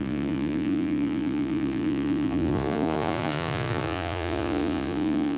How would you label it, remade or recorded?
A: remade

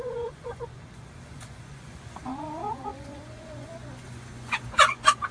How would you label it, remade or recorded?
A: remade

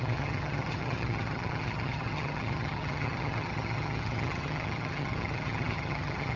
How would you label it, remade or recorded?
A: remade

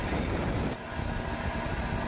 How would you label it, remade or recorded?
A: recorded